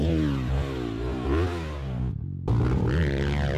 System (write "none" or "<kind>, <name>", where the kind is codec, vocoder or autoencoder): none